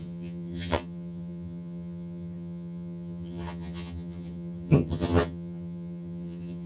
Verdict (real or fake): fake